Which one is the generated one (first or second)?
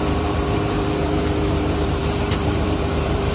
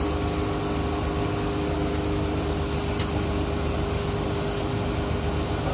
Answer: first